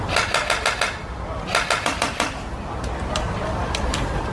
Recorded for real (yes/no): yes